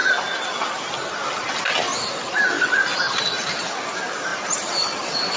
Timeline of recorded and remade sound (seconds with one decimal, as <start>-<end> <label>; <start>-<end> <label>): 0.0-4.3 recorded; 4.3-5.4 remade